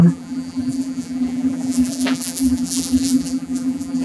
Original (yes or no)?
no